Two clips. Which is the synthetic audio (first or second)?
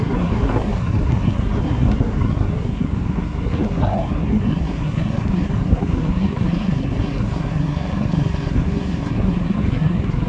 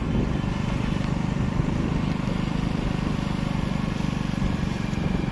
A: first